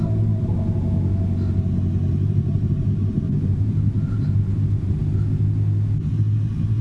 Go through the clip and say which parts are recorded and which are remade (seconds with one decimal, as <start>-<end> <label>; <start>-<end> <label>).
0.0-2.1 recorded; 2.1-5.0 remade; 5.0-6.8 recorded